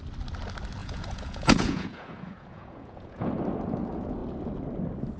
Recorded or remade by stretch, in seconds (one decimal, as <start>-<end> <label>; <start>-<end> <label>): 0.0-0.8 recorded; 0.8-3.3 remade; 3.3-5.2 recorded